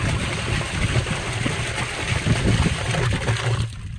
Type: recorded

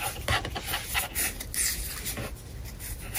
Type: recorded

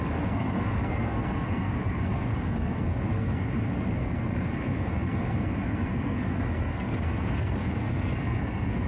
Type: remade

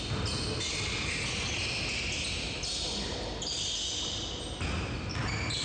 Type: recorded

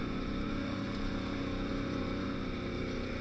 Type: remade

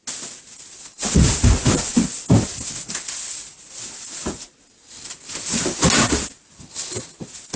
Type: recorded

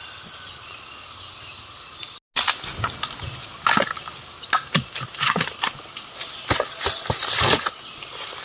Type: recorded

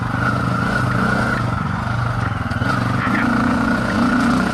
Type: remade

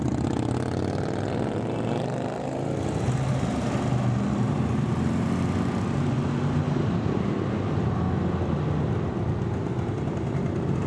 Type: recorded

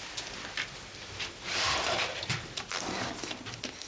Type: recorded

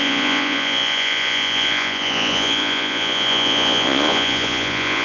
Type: remade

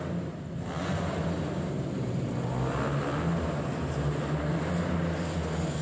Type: recorded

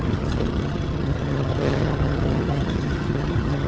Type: remade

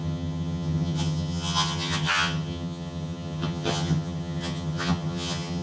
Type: remade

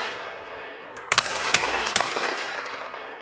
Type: remade